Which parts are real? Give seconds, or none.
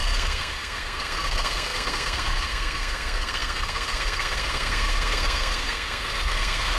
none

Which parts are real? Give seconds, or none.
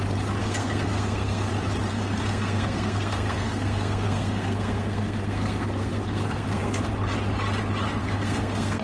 0.0-0.4; 1.5-1.9; 6.9-8.0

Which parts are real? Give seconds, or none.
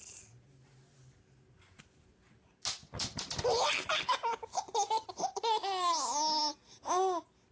0.0-7.5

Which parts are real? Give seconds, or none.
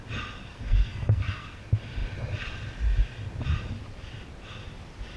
0.0-0.5; 1.6-5.2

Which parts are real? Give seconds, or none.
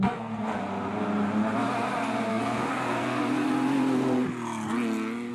0.6-2.3; 3.2-5.3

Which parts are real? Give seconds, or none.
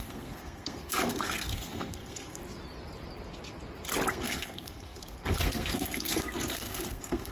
2.4-4.1